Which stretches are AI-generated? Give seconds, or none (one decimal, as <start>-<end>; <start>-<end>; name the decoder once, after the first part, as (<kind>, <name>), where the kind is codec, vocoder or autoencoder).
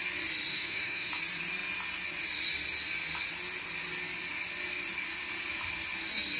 0.5-1.1 (autoencoder, DAC-VAE)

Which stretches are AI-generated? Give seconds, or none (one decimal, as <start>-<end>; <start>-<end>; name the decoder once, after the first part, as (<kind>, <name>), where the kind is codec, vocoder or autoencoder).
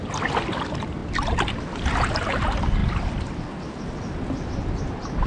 none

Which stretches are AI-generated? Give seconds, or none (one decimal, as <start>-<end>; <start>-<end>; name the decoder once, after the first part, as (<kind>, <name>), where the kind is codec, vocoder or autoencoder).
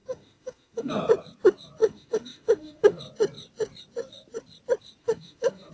0.0-0.9 (autoencoder, DAC-VAE); 1.8-3.0; 5.0-5.7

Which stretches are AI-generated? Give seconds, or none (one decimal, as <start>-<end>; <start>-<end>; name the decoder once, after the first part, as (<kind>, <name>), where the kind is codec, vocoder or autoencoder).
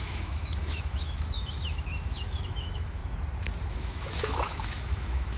0.0-3.0 (autoencoder, DAC-VAE); 3.7-5.4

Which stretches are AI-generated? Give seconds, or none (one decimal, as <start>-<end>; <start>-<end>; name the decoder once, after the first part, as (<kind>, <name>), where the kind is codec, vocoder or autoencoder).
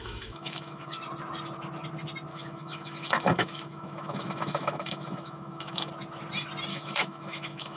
0.0-1.0 (autoencoder, DAC-VAE); 2.3-5.9; 6.7-7.8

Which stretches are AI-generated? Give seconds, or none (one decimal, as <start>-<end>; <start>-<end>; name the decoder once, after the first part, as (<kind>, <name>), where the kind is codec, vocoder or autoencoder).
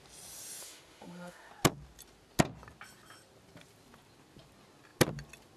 0.6-1.5 (autoencoder, DAC-VAE)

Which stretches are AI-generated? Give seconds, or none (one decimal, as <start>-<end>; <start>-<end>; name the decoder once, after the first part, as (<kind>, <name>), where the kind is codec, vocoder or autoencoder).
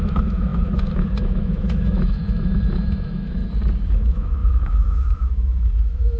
0.0-3.4 (autoencoder, DAC-VAE); 3.9-6.2